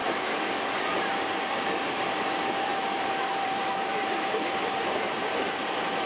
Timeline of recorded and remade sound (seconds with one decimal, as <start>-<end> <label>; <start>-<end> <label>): 0.0-0.8 recorded; 0.8-6.1 remade